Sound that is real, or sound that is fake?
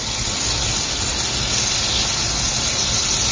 real